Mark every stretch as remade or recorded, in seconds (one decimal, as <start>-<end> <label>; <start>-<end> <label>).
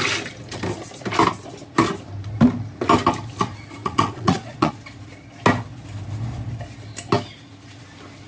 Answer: 0.0-3.8 recorded; 3.8-4.7 remade; 4.7-8.3 recorded